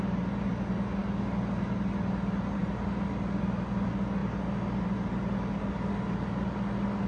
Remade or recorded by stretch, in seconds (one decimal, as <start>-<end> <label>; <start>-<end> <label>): 0.0-7.1 recorded